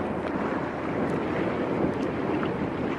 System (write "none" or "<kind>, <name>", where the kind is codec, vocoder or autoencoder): none